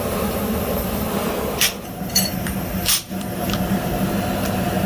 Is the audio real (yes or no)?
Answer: no